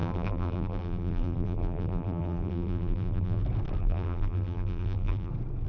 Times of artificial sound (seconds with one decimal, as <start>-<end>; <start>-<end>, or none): 0.0-3.4; 3.8-5.3